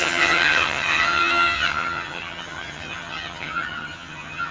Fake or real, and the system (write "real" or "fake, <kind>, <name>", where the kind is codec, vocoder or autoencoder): fake, vocoder, HiFi-GAN